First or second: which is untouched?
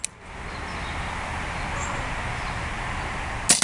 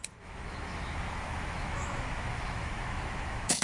first